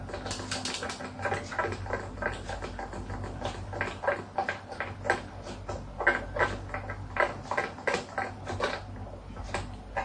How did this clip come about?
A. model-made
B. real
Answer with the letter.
B